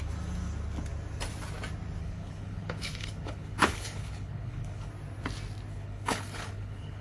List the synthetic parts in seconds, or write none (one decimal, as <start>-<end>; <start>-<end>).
2.0-4.9; 5.7-7.0